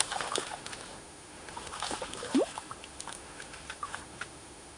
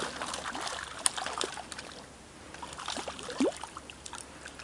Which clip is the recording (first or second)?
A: second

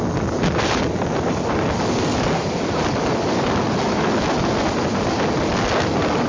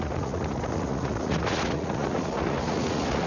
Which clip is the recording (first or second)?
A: first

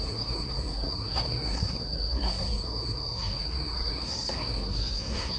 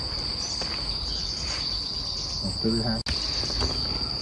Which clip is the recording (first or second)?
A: second